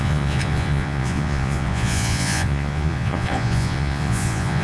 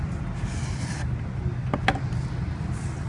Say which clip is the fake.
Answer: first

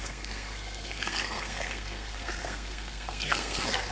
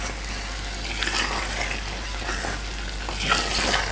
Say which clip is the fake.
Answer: first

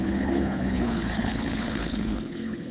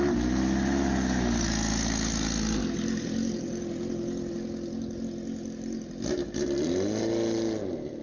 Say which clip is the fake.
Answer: first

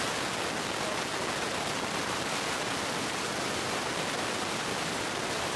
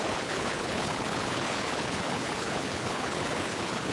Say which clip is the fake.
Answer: second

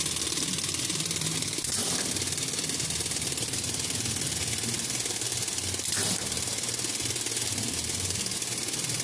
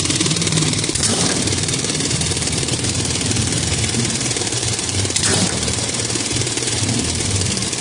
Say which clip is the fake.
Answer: second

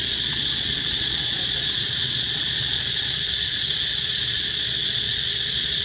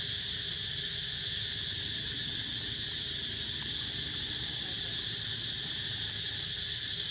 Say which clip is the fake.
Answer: first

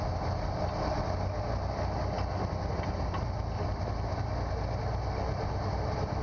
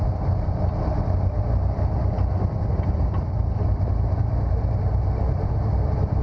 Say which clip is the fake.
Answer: second